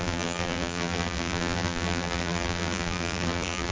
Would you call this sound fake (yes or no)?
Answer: yes